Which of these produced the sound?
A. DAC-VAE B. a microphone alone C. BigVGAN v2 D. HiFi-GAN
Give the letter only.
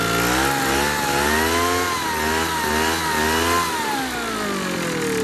B